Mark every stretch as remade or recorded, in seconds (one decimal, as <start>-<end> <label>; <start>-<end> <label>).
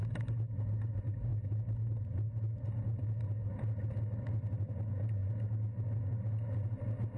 0.0-7.2 recorded